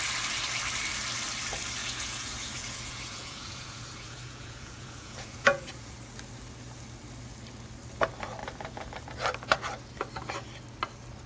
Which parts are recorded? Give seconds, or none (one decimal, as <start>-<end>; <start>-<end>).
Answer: 0.0-1.8; 5.9-11.3